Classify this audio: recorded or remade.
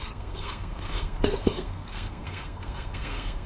remade